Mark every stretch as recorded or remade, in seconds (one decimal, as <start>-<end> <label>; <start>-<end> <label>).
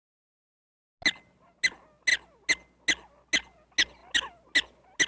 0.0-5.1 recorded